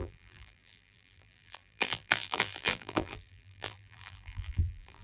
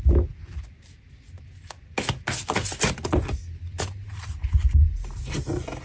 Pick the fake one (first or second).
first